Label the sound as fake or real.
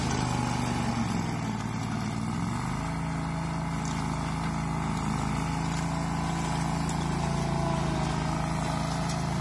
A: real